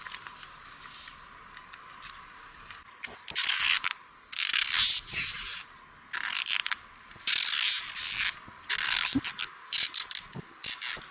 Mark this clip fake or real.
real